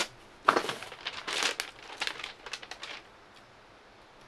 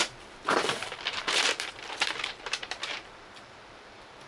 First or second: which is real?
first